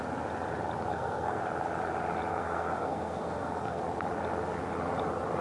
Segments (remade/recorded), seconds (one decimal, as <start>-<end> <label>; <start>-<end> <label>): 0.0-0.9 recorded; 0.9-1.4 remade; 1.4-2.3 recorded; 2.3-3.8 remade; 3.8-5.4 recorded